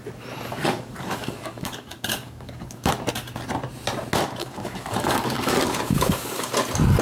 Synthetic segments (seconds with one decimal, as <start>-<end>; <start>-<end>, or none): 0.5-2.9; 4.4-6.5